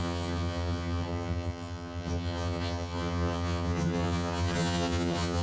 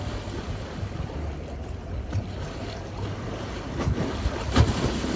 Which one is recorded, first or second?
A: second